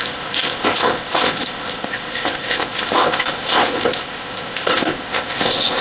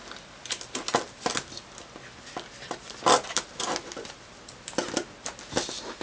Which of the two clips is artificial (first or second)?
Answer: first